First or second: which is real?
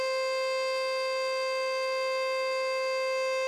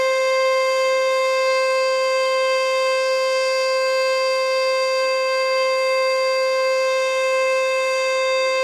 first